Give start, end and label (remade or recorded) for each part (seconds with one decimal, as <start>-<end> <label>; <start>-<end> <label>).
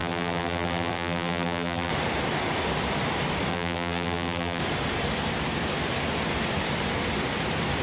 0.0-1.9 remade; 1.9-3.5 recorded; 3.5-4.6 remade; 4.6-7.8 recorded